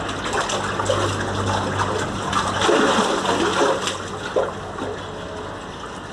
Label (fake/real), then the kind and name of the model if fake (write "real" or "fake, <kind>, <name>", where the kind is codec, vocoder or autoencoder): real